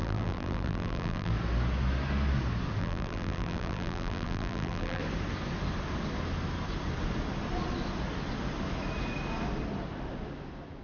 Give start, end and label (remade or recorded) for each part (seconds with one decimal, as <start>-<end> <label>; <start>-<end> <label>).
0.0-1.3 remade; 1.3-2.8 recorded; 2.8-5.0 remade; 5.0-10.8 recorded